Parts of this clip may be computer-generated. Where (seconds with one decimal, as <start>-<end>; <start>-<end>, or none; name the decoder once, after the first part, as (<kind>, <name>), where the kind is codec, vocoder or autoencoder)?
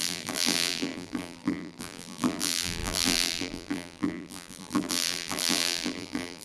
0.0-6.4 (vocoder, BigVGAN v2)